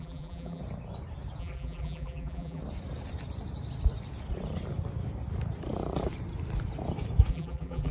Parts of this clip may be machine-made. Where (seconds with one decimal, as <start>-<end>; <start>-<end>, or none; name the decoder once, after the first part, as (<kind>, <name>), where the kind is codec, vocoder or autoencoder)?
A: 0.0-0.6 (vocoder, BigVGAN v2); 1.4-2.6; 7.3-7.9